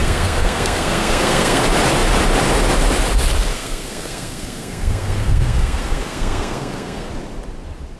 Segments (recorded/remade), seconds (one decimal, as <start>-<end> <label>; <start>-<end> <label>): 0.0-1.6 remade; 1.6-3.5 recorded; 3.5-7.1 remade; 7.1-8.0 recorded